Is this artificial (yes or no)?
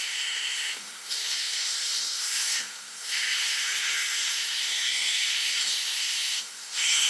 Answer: yes